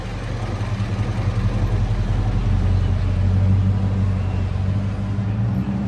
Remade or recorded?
recorded